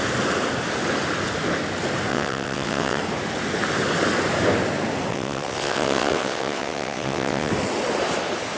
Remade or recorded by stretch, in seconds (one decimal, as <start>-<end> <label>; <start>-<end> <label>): 0.0-2.1 recorded; 2.1-3.0 remade; 3.0-5.1 recorded; 5.1-7.5 remade; 7.5-8.6 recorded